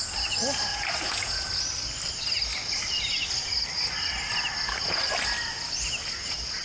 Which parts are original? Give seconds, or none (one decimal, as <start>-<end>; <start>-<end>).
0.0-0.7; 1.5-6.6